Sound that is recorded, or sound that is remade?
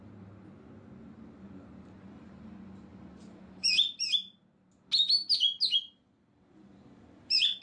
recorded